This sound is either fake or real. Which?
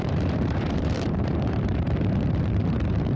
fake